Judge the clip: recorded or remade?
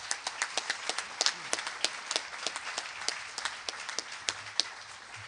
recorded